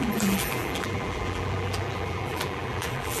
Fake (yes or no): yes